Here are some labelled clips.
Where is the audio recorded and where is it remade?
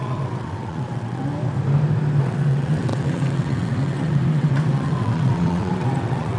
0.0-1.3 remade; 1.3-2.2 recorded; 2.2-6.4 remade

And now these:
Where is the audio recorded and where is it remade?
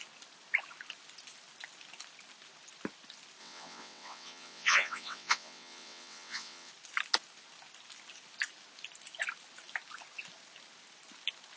0.0-3.4 recorded; 3.4-6.7 remade; 6.7-11.6 recorded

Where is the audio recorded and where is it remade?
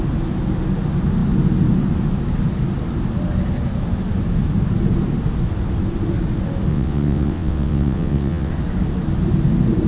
0.0-6.7 recorded; 6.7-8.5 remade; 8.5-9.9 recorded